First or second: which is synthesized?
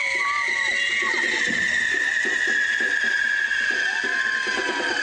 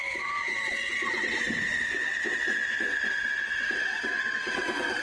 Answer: second